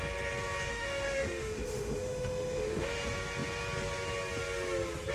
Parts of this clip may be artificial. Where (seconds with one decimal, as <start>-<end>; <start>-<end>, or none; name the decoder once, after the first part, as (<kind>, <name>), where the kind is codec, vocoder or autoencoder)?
0.7-3.0 (autoencoder, DAC-VAE)